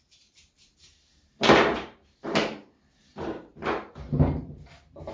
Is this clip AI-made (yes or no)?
yes